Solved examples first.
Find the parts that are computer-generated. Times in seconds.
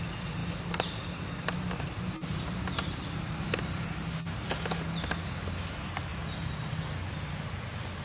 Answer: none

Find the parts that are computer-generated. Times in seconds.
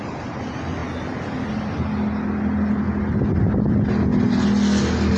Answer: none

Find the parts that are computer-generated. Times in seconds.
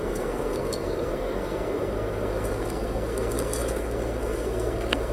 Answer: 0.0-5.1 (codec, SNAC)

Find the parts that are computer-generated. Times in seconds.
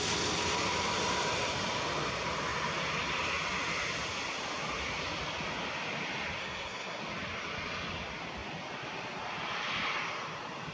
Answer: 6.4-7.0 (codec, SNAC)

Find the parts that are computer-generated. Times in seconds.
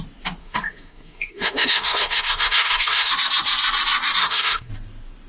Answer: 0.4-3.1 (codec, SNAC); 4.2-4.7